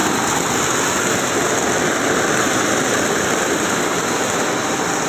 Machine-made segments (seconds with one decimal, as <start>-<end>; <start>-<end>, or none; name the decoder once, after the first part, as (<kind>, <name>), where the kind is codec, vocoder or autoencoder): 3.1-5.1 (vocoder, BigVGAN v2)